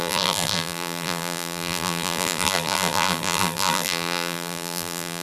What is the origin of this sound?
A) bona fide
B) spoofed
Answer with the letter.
B